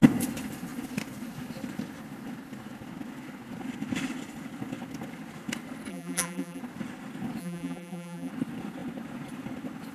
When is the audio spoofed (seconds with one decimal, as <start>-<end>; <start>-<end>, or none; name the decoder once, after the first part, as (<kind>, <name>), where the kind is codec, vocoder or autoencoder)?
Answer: 5.9-6.6 (vocoder, BigVGAN v2); 7.4-8.3